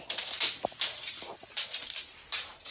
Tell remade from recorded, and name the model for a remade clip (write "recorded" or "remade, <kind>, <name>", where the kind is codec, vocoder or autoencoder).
recorded